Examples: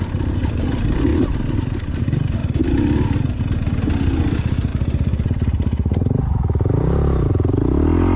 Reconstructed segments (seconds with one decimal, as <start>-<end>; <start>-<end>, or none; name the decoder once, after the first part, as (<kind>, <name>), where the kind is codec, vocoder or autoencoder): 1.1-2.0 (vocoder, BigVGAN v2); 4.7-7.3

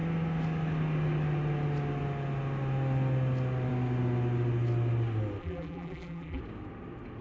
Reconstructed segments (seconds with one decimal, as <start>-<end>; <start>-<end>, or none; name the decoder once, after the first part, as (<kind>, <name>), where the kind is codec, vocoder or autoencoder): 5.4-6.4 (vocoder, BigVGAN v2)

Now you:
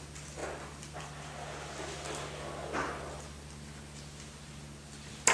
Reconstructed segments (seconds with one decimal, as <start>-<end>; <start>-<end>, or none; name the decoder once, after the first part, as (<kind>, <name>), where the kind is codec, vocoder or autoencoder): none